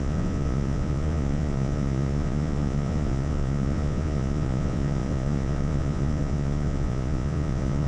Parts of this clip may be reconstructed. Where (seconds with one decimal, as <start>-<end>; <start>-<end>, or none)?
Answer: 0.0-7.9